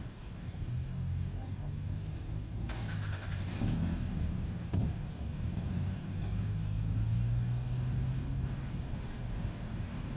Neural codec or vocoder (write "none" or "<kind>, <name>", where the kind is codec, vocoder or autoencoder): codec, DAC